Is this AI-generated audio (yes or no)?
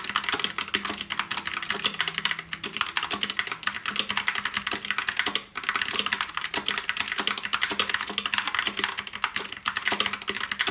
no